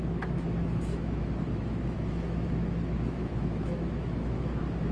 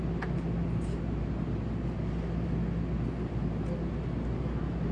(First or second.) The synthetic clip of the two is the first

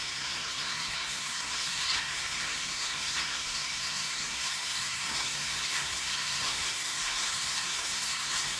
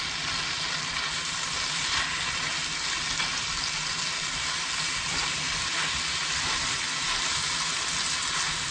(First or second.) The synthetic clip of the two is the first